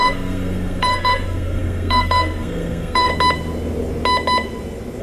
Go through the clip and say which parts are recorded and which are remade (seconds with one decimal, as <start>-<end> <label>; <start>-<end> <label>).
0.0-3.1 remade; 3.1-5.0 recorded